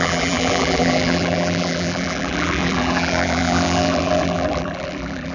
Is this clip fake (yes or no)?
yes